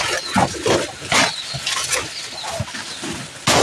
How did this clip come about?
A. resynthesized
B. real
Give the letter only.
B